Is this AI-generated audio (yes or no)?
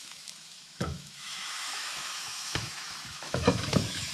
yes